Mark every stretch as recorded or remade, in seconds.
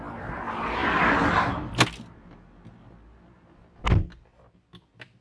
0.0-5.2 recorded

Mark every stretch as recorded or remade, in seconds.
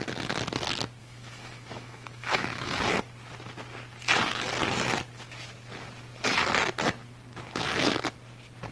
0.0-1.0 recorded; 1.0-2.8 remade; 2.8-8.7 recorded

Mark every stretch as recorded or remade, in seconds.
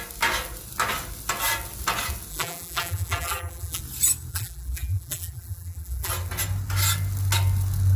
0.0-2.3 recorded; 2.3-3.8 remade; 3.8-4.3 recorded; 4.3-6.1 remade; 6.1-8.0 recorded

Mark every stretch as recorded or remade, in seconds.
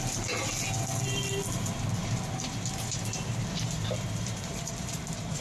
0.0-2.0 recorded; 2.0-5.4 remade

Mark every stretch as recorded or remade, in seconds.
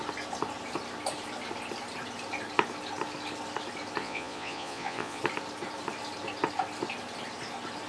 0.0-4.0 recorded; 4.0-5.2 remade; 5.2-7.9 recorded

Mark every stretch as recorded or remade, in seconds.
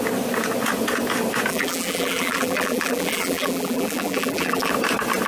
0.0-1.5 recorded; 1.5-4.7 remade; 4.7-5.3 recorded